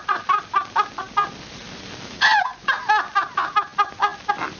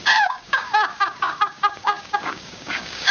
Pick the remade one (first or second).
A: second